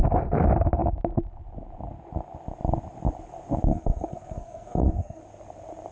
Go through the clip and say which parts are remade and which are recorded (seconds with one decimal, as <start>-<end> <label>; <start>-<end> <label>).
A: 0.0-3.7 recorded; 3.7-5.2 remade; 5.2-5.9 recorded